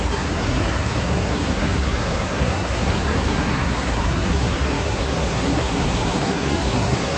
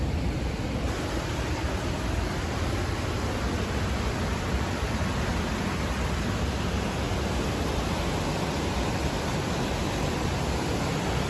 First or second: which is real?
second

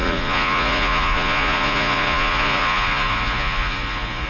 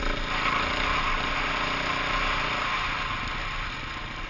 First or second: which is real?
second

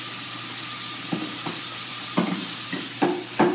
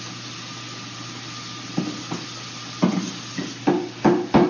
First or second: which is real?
second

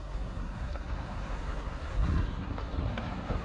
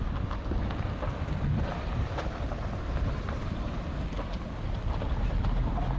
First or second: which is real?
second